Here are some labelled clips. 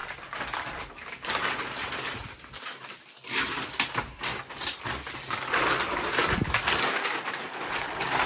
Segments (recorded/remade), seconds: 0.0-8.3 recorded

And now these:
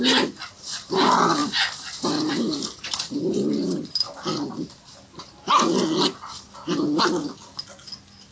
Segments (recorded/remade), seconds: 0.0-8.3 recorded

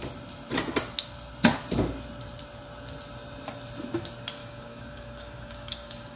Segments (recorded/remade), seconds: 0.0-4.4 recorded; 4.4-6.2 remade

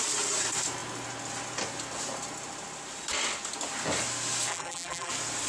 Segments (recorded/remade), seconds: 0.0-4.5 recorded; 4.5-5.1 remade; 5.1-5.5 recorded

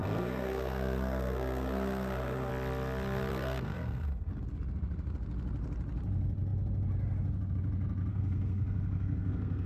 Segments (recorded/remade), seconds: 0.0-2.5 remade; 2.5-3.3 recorded; 3.3-4.3 remade; 4.3-8.1 recorded; 8.1-9.7 remade

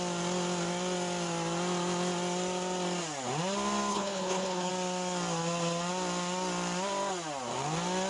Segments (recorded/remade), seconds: 0.0-3.9 recorded; 3.9-4.7 remade; 4.7-8.1 recorded